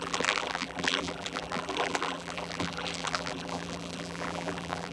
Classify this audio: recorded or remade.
remade